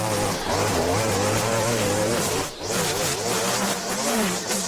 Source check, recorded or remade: remade